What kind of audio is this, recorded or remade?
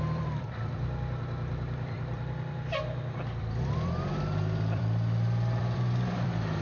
remade